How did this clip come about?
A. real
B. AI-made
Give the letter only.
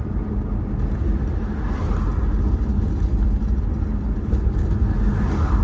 A